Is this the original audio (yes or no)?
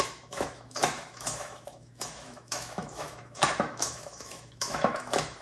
no